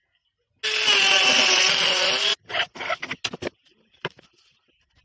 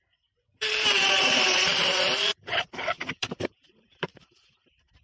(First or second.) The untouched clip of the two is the first